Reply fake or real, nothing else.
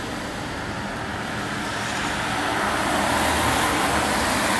real